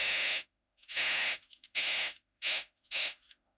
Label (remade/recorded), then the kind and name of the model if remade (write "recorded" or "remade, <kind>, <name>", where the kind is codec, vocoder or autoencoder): remade, autoencoder, DAC-VAE